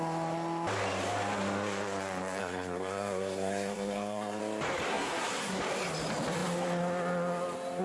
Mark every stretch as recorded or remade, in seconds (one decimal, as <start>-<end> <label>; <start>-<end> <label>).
0.0-2.4 recorded; 2.4-4.4 remade; 4.4-4.9 recorded; 4.9-5.6 remade; 5.6-7.8 recorded